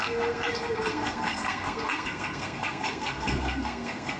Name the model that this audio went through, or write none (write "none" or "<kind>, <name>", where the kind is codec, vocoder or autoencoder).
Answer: codec, SNAC